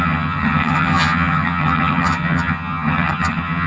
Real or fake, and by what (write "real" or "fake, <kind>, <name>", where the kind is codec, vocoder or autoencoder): fake, vocoder, HiFi-GAN